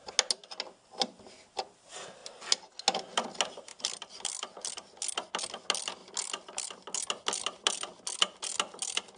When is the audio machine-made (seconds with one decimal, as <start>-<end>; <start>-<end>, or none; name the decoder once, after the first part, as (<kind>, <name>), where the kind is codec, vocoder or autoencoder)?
3.7-4.2 (vocoder, BigVGAN v2); 6.0-6.7